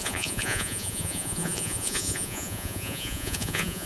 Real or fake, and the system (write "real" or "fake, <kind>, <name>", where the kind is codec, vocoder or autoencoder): fake, vocoder, Vocos